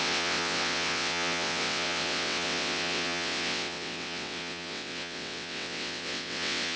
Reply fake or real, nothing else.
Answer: fake